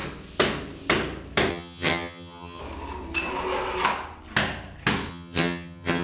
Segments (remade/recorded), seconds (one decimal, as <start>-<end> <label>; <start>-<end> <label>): 0.0-1.5 recorded; 1.5-2.6 remade; 2.6-5.1 recorded; 5.1-6.0 remade